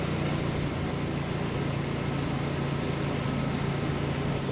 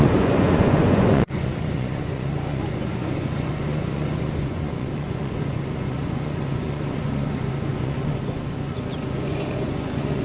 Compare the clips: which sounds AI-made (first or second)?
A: second